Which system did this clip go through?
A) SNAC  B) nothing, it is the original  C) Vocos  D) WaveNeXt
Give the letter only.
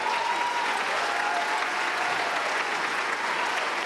C